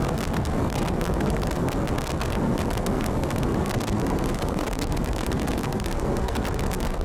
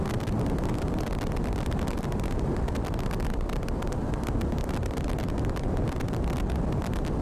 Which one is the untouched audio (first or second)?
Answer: second